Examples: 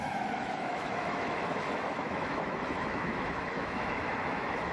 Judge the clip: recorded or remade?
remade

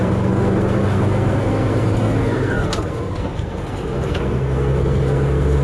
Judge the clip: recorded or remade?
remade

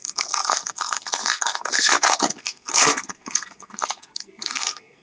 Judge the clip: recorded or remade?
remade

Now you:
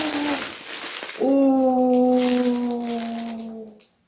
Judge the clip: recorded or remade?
recorded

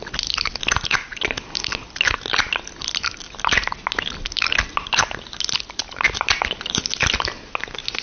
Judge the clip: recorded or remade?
recorded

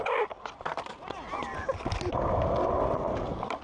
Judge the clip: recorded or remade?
recorded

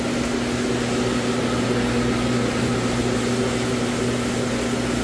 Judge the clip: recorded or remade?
recorded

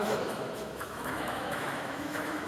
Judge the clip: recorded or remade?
remade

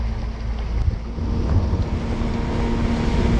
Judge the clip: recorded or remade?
recorded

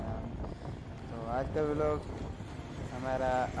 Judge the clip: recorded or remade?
recorded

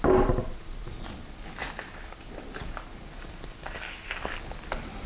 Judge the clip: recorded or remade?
recorded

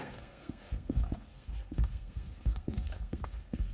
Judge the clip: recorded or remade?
remade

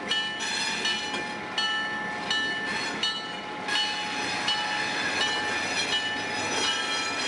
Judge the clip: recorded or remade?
recorded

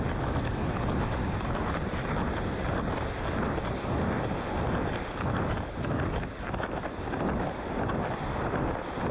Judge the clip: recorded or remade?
recorded